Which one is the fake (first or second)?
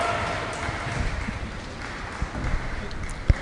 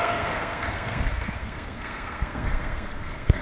second